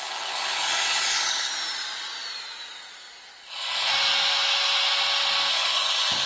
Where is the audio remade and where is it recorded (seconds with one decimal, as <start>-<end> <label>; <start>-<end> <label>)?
0.0-1.5 remade; 1.5-3.4 recorded; 3.4-3.9 remade; 3.9-5.5 recorded; 5.5-6.3 remade